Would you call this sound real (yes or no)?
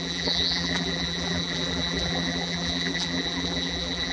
no